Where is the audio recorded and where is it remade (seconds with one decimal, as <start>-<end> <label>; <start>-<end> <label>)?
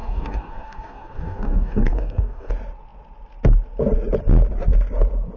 0.0-2.5 remade; 2.5-5.4 recorded